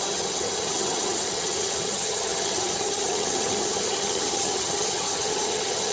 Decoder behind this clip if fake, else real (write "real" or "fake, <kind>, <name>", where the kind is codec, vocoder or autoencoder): fake, vocoder, HiFi-GAN